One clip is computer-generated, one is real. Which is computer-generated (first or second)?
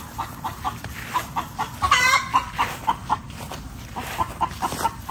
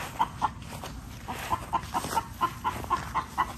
first